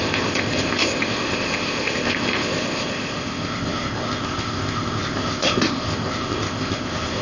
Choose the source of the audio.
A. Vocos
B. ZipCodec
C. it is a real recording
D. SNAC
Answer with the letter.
B